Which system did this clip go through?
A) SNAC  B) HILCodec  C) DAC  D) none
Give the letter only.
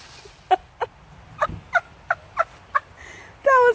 D